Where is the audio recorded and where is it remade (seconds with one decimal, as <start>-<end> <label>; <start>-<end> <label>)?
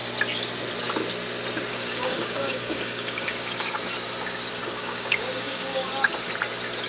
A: 0.0-1.7 recorded; 1.7-3.8 remade; 3.8-4.6 recorded; 4.6-5.9 remade; 5.9-6.9 recorded